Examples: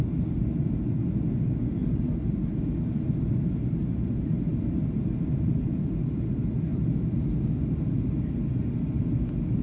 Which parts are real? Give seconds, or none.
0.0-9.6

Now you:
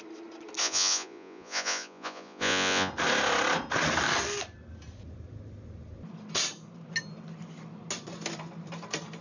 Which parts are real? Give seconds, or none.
0.0-0.6; 2.9-9.2

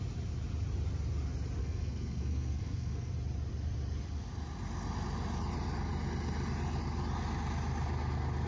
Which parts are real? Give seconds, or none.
0.0-1.6; 3.1-8.5

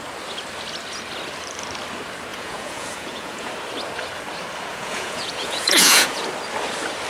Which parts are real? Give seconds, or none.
0.0-2.3; 3.5-4.7; 6.2-7.1

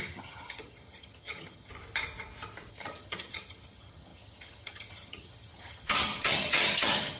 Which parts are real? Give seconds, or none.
1.7-2.7